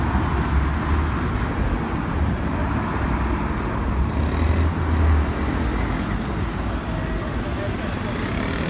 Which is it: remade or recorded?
recorded